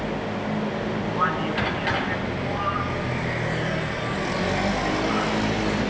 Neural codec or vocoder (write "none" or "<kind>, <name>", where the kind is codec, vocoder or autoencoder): none